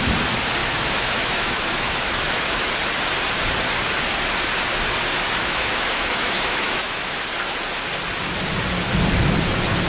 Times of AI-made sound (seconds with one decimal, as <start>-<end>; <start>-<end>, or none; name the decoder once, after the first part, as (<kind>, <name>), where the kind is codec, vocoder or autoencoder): 0.6-2.7 (autoencoder, DAC-VAE); 5.4-7.2